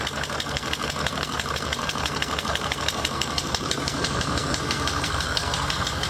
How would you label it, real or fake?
fake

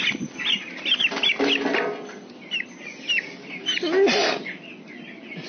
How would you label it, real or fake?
real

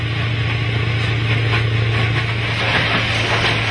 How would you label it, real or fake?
real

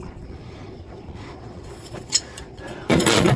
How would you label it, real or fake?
fake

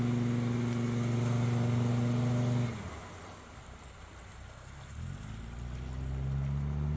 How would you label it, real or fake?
real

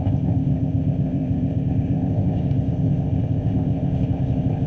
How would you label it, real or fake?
fake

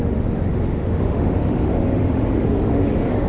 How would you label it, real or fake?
fake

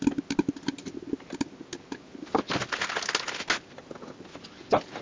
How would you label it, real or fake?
real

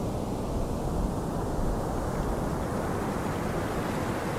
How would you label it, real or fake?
real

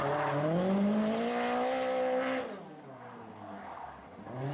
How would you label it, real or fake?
real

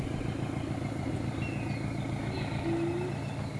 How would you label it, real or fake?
real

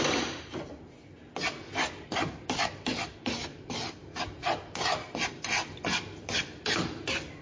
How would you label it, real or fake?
real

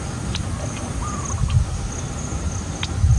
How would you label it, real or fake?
real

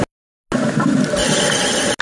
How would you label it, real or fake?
real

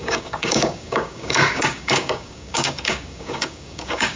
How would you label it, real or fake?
fake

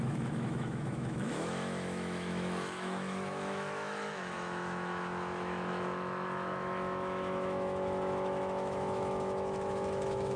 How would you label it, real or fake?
fake